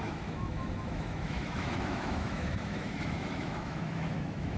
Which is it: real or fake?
fake